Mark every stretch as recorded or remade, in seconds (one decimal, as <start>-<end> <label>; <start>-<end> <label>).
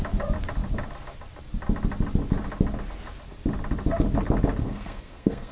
0.0-4.6 recorded; 4.6-5.5 remade